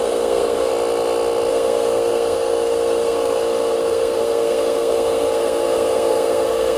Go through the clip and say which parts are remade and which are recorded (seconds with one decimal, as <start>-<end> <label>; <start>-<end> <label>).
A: 0.0-0.7 remade; 0.7-1.5 recorded; 1.5-6.8 remade